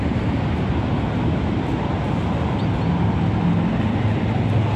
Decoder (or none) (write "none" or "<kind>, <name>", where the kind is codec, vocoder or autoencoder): none